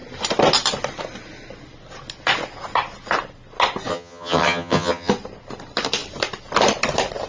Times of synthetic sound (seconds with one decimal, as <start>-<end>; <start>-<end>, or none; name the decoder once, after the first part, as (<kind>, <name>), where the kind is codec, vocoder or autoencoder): 3.9-5.1 (vocoder, HiFi-GAN)